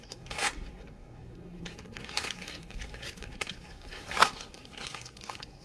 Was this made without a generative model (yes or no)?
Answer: no